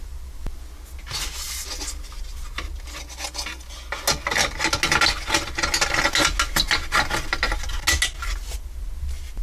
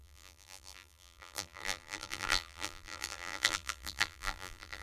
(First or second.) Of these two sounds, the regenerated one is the second